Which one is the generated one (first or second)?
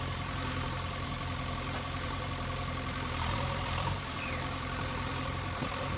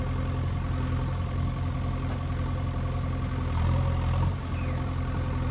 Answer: first